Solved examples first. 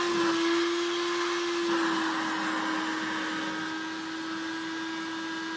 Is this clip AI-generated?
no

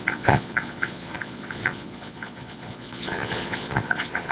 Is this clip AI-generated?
yes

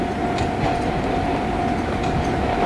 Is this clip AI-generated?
no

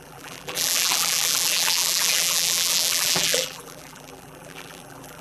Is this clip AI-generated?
yes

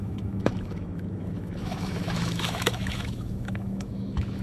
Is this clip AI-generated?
yes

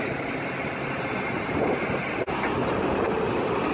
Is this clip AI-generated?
no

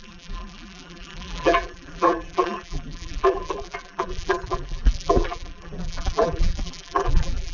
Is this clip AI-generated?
yes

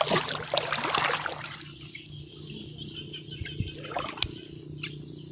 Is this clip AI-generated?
no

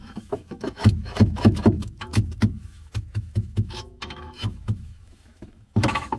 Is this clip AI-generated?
yes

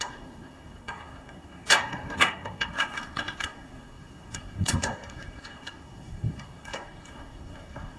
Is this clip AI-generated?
yes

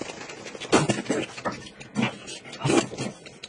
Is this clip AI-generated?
no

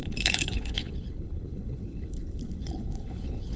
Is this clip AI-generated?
yes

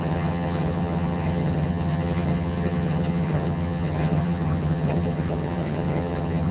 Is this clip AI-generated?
yes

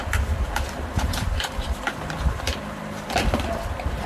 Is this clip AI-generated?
yes